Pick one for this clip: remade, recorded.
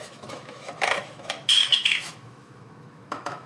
remade